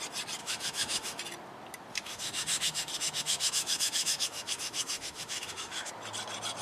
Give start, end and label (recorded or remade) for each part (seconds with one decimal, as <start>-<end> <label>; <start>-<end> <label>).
0.0-0.4 recorded; 0.4-1.2 remade; 1.2-1.9 recorded; 1.9-5.9 remade; 5.9-6.6 recorded